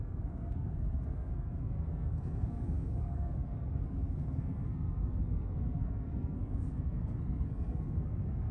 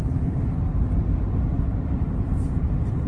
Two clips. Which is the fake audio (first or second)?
first